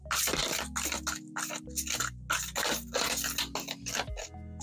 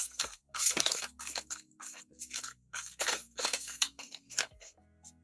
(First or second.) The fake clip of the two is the second